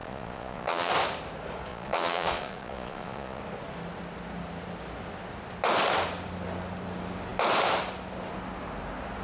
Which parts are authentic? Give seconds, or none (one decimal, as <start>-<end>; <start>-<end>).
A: 0.9-1.7; 3.4-9.2